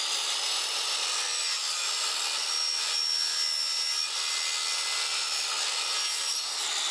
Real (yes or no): yes